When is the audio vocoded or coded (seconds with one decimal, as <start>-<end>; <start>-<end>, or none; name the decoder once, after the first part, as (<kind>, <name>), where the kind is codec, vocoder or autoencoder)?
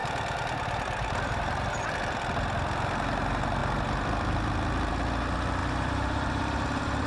0.0-1.9 (vocoder, BigVGAN v2); 5.6-7.1